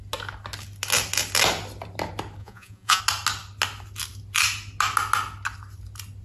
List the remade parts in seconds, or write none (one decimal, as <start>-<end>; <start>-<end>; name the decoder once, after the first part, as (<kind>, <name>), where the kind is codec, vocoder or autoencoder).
2.4-3.0 (vocoder, Vocos)